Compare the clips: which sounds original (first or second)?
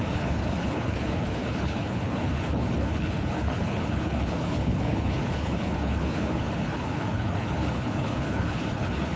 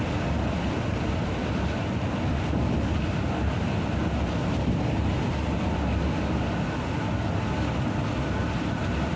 second